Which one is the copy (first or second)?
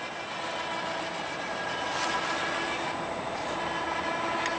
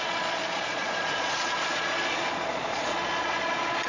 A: second